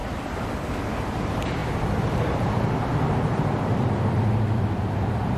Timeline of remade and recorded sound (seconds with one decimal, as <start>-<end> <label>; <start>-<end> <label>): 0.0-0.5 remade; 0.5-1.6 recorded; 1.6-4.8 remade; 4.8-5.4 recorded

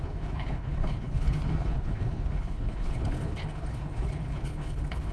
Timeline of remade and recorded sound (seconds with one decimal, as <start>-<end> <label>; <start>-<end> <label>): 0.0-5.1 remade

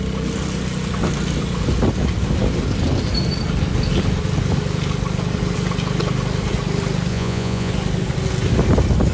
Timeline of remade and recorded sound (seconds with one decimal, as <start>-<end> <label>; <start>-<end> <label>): 0.0-7.1 recorded; 7.1-7.7 remade; 7.7-9.1 recorded

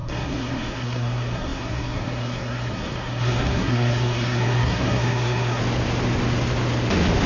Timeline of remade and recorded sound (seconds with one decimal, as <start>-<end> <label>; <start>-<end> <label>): 0.0-5.6 remade; 5.6-7.3 recorded

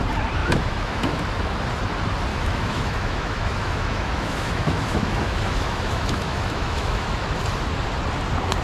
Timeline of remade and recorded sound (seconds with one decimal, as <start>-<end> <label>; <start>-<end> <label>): 0.0-0.4 recorded; 0.4-1.2 remade; 1.2-2.3 recorded; 2.3-7.4 remade; 7.4-8.6 recorded

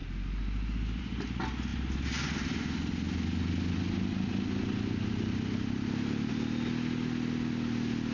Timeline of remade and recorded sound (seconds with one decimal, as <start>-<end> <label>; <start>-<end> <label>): 0.0-8.1 recorded

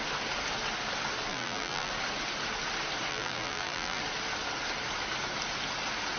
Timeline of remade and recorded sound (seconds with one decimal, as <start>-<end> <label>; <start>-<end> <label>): 0.0-1.3 recorded; 1.3-1.9 remade; 1.9-3.1 recorded; 3.1-4.0 remade; 4.0-6.2 recorded

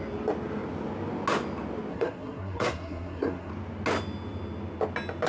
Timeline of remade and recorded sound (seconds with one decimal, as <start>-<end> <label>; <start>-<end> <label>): 0.0-1.9 recorded; 1.9-3.5 remade; 3.5-5.3 recorded